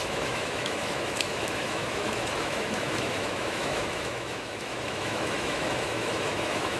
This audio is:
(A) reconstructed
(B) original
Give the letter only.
A